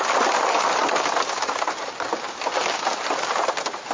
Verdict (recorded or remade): recorded